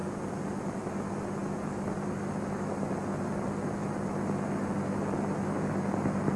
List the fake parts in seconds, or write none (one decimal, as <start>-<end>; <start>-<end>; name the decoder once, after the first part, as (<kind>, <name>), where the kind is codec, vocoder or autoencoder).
none